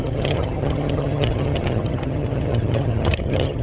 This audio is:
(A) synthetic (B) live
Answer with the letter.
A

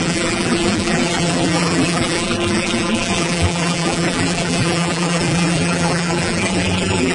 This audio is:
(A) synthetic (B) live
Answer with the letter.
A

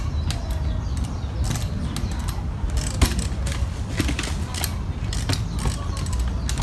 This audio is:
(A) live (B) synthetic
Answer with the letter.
A